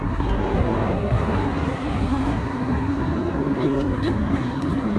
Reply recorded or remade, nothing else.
remade